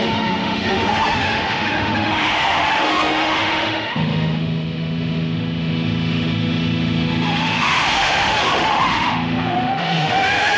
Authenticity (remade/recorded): remade